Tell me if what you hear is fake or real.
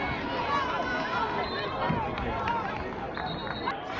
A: real